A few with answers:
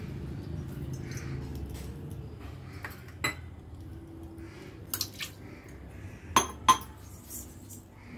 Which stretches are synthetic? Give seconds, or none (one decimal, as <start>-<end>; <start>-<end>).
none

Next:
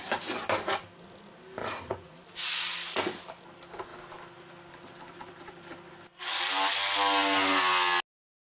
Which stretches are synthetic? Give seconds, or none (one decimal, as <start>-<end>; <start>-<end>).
1.6-2.2

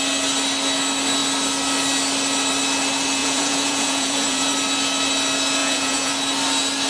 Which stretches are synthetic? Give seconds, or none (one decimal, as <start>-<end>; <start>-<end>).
3.2-4.5; 5.6-6.1